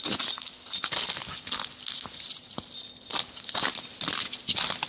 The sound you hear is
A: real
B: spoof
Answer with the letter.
A